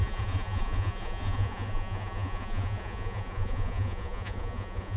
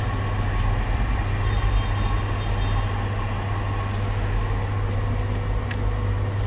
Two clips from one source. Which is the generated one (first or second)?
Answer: first